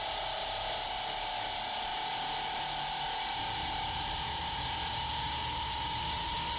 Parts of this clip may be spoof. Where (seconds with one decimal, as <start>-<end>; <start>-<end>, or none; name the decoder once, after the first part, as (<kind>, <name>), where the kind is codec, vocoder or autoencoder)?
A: none